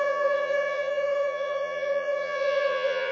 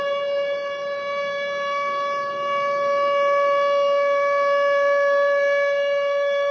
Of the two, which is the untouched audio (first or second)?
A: second